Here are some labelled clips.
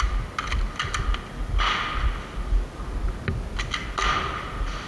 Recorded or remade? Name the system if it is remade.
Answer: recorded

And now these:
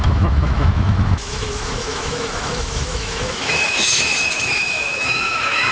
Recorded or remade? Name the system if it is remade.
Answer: remade, autoencoder, DAC-VAE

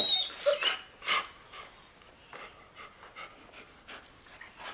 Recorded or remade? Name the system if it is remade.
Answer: recorded